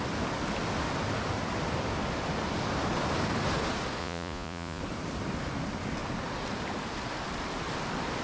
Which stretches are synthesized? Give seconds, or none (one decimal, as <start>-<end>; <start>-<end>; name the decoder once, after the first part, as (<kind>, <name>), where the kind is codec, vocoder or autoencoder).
4.0-4.8 (vocoder, Vocos)